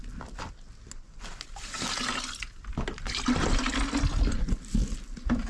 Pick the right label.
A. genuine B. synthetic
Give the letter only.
A